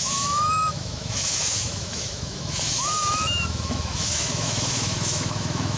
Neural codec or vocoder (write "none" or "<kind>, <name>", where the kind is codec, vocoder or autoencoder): autoencoder, DAC-VAE